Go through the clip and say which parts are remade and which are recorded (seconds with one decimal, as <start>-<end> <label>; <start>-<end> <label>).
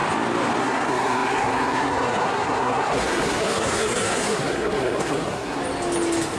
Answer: 0.0-0.6 recorded; 0.6-5.6 remade; 5.6-6.4 recorded